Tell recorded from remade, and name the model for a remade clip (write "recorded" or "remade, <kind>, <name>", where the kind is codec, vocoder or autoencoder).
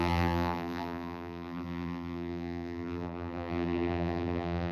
remade, vocoder, BigVGAN v2